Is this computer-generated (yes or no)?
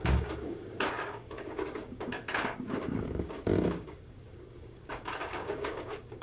yes